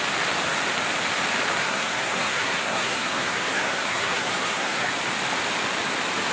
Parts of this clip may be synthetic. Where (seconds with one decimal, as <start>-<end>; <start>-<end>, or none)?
1.6-4.9